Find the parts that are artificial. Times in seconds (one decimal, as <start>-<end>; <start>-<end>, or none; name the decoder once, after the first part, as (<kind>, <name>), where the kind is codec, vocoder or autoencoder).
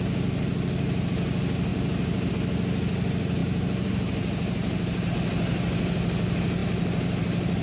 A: 1.7-2.3 (vocoder, BigVGAN v2); 3.4-5.1